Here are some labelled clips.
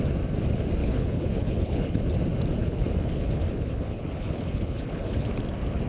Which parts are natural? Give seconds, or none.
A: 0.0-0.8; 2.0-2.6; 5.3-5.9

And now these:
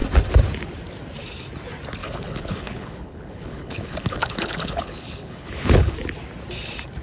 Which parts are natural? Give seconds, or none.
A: 0.0-2.0; 5.9-7.0

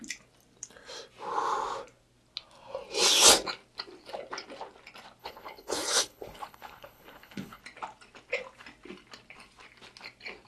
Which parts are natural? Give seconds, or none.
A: 0.0-5.2; 7.6-10.5

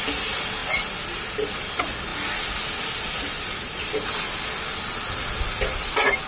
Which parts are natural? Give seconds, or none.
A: 0.0-6.3

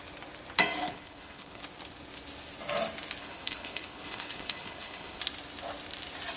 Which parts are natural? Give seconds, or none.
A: 0.0-0.8; 1.6-3.2; 5.2-6.4

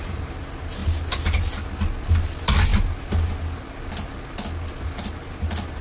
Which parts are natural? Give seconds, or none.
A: 0.0-5.8

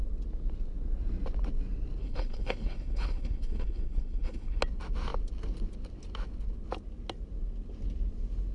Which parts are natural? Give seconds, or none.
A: 0.0-2.0; 4.6-8.5

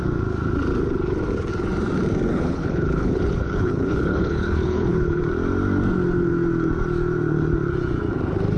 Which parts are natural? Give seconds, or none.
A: 0.0-2.3; 5.2-8.6